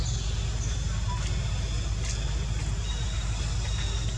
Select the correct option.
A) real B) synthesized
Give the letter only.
A